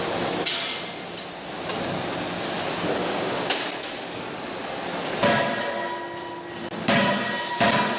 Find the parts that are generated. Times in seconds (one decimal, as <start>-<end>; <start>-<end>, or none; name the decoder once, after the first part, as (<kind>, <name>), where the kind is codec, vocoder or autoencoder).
3.0-3.6 (codec, DAC)